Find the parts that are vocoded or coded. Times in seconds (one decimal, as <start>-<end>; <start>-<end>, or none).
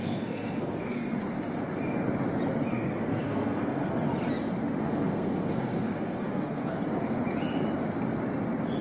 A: 0.0-1.2; 2.7-3.9; 4.8-6.8